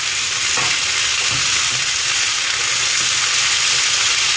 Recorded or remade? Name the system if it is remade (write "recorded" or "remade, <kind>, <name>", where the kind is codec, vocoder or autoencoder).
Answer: recorded